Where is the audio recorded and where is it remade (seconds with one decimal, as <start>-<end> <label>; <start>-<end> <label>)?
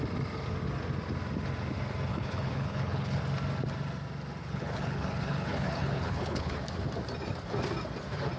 0.0-2.1 recorded; 2.1-3.2 remade; 3.2-4.4 recorded; 4.4-6.6 remade; 6.6-8.4 recorded